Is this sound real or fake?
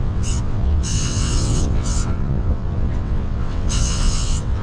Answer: fake